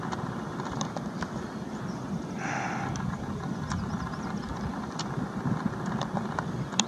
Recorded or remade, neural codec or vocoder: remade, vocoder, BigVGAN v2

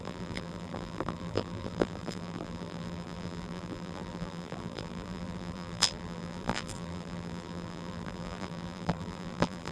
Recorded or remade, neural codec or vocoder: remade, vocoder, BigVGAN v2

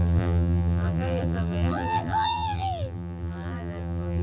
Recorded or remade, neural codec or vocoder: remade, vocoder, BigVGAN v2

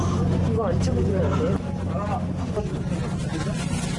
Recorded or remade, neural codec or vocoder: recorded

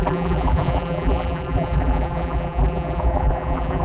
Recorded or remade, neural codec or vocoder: remade, vocoder, BigVGAN v2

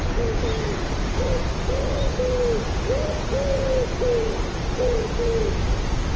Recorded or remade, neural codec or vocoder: recorded